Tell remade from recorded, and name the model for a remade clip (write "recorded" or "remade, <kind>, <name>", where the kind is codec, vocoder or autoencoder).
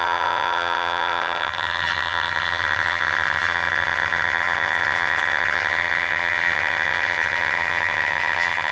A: remade, vocoder, HiFi-GAN